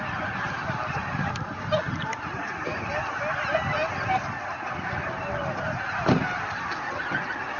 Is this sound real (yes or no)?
yes